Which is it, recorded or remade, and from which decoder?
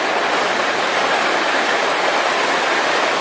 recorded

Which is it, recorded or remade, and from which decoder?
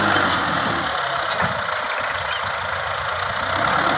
recorded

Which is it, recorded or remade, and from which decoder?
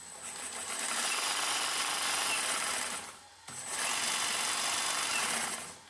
recorded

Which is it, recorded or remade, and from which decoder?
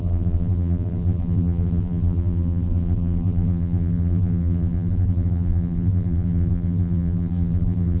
remade, vocoder, BigVGAN v2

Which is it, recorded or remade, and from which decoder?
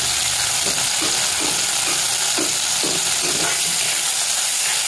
recorded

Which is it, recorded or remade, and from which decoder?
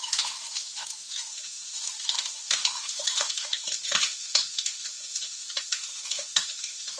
remade, autoencoder, DAC-VAE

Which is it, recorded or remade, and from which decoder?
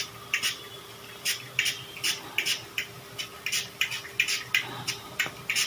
recorded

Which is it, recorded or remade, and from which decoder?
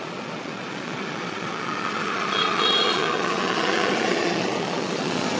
remade, vocoder, Vocos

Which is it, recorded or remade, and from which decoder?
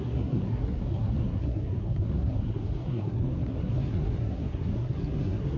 remade, codec, SNAC